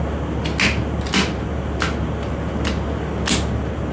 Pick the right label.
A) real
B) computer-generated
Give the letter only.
A